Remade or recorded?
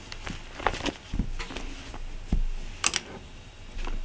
recorded